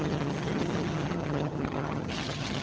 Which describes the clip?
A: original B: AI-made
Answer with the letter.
B